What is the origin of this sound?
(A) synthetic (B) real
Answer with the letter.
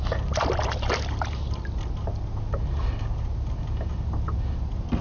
B